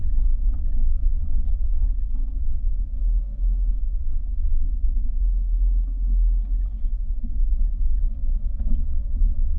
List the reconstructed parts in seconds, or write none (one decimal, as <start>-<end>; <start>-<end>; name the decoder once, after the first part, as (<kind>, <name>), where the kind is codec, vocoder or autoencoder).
0.0-3.0 (vocoder, WaveNeXt); 3.7-5.2; 6.8-9.6